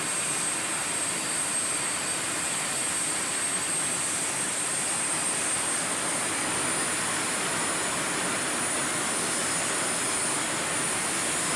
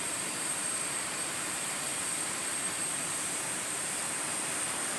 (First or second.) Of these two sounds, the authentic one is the first